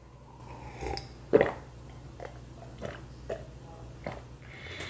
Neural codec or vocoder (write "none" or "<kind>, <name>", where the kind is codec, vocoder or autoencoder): none